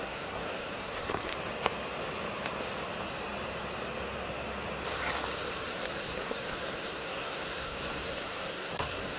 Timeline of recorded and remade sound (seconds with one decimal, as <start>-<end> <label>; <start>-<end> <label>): 0.0-1.3 remade; 1.3-5.7 recorded; 5.7-9.2 remade